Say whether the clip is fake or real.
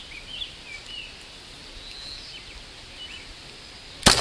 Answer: real